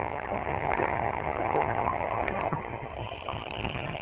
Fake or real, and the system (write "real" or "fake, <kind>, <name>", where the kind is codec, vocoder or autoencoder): fake, vocoder, HiFi-GAN